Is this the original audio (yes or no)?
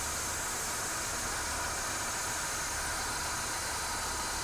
yes